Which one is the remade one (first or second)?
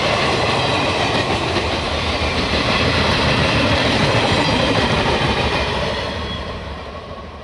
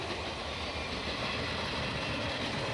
first